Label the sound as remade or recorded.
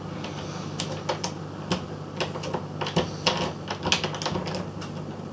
recorded